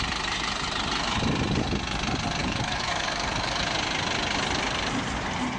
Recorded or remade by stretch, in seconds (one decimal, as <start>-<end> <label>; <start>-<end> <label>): 0.0-2.4 recorded; 2.4-3.6 remade; 3.6-5.6 recorded